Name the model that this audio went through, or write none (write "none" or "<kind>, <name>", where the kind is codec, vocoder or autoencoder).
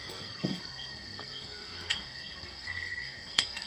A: codec, SNAC